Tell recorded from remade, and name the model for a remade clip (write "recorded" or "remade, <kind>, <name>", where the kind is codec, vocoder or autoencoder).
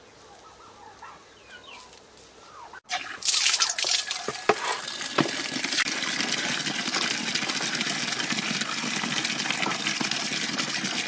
recorded